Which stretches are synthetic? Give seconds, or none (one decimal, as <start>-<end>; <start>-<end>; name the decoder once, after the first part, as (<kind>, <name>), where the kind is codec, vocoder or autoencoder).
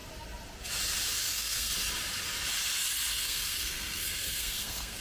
1.2-1.7 (codec, SNAC); 3.1-5.0